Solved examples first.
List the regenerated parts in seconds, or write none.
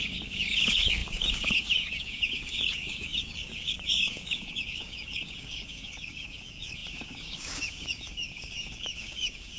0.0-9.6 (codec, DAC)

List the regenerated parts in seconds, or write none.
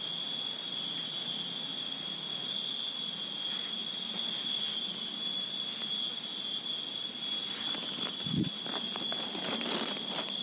none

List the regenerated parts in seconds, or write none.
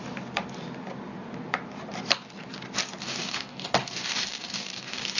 3.0-5.2 (codec, DAC)